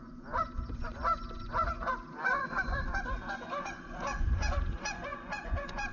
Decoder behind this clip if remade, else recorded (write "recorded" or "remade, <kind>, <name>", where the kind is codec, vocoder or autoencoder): remade, vocoder, Vocos